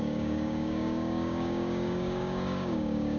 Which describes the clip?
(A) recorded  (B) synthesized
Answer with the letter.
B